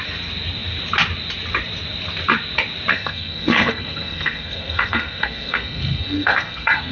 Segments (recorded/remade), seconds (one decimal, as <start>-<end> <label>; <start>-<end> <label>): 0.0-2.9 recorded; 2.9-6.9 remade